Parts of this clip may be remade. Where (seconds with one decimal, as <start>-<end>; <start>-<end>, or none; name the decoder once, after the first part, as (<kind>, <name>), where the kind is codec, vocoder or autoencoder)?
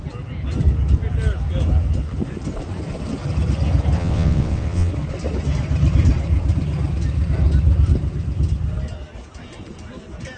4.0-4.9 (vocoder, WaveNeXt)